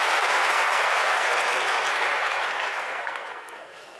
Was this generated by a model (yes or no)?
yes